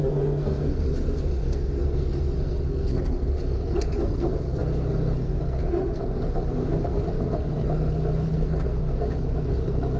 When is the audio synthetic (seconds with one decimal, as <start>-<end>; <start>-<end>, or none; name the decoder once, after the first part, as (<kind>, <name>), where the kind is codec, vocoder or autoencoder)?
0.0-10.0 (codec, SNAC)